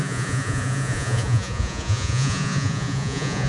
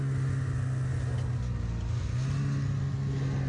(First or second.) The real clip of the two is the second